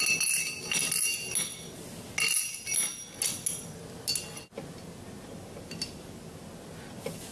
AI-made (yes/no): no